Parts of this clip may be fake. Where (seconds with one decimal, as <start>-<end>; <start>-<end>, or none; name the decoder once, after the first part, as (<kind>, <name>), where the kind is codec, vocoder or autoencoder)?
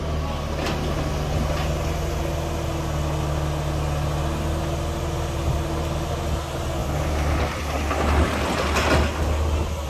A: none